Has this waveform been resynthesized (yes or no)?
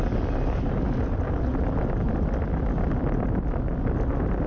no